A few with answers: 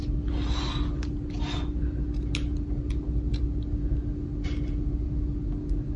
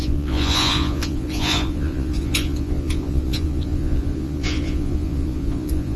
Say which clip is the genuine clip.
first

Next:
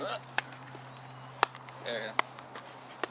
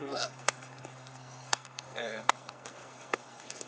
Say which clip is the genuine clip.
first